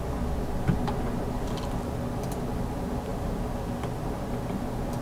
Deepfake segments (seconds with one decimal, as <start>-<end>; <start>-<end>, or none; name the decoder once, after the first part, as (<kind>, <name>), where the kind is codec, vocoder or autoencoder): none